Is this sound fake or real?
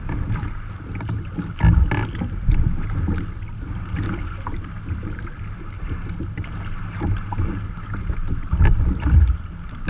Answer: real